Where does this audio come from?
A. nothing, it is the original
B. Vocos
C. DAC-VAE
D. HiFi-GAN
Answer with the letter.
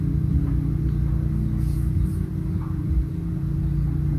A